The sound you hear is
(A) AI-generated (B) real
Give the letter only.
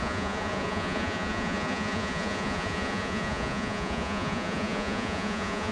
A